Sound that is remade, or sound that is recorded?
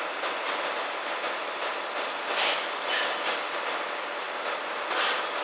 recorded